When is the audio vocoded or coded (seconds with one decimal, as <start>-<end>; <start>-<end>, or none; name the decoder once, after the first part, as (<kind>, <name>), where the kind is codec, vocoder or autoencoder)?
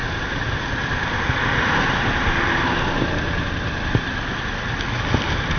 none